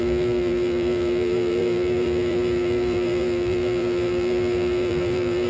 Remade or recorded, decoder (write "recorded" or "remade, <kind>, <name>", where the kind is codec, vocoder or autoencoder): remade, vocoder, BigVGAN v2